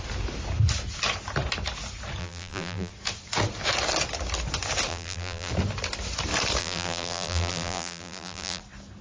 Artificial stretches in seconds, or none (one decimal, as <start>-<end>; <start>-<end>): 2.2-2.9; 4.9-5.5; 6.6-8.6